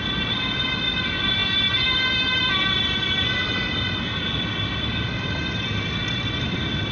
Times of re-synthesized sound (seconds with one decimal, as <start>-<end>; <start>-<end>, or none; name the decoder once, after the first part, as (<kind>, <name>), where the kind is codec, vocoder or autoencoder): none